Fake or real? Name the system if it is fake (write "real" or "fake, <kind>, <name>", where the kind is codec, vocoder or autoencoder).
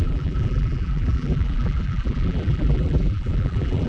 fake, vocoder, BigVGAN v2